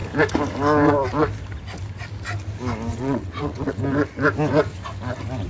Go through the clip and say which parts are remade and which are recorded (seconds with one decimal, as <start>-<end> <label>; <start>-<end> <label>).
0.0-2.9 recorded; 2.9-3.8 remade; 3.8-5.5 recorded